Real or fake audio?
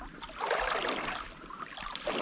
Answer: real